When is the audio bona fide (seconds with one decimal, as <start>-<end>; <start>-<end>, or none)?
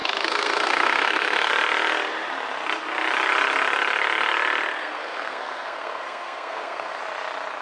1.5-4.8; 7.0-7.6